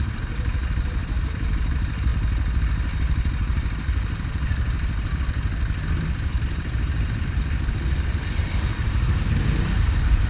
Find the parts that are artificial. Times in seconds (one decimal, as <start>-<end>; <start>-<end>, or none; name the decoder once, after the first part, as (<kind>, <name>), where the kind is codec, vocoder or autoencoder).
0.0-2.1 (vocoder, BigVGAN v2); 2.6-4.6; 6.0-10.3